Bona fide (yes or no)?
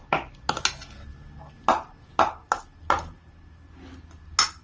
yes